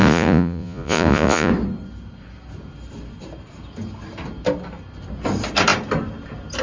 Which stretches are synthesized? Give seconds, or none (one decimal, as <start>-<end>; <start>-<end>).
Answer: 0.0-1.5